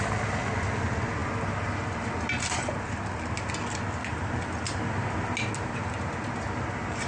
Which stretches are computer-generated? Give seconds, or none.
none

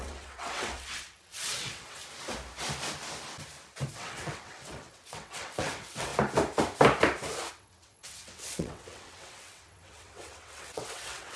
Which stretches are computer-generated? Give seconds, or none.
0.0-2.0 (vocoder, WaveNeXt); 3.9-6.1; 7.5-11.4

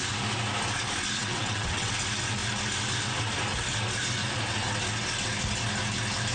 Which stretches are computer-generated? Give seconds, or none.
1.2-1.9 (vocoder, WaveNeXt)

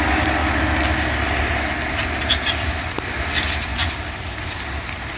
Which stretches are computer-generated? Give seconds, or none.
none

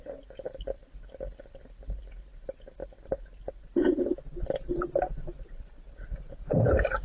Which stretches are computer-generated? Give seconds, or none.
none

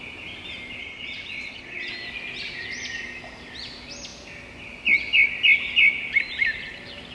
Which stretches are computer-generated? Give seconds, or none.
0.8-1.9 (vocoder, WaveNeXt)

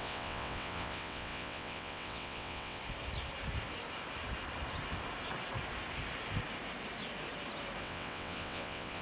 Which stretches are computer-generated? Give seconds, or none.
0.0-2.8 (vocoder, WaveNeXt); 7.8-9.0

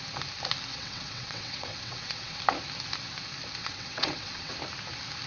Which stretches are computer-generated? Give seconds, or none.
0.7-2.4 (vocoder, WaveNeXt); 3.6-4.5